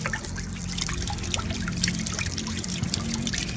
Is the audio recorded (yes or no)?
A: no